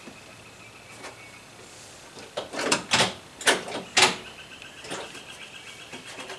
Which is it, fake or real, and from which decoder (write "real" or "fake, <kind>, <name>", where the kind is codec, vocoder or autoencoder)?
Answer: real